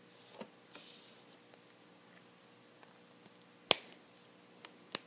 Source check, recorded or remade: recorded